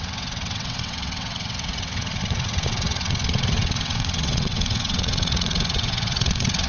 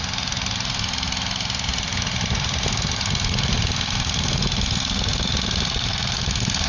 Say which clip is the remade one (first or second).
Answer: first